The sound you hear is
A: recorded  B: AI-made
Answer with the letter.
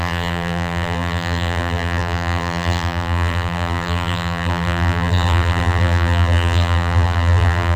B